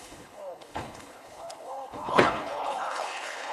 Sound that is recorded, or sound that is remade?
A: remade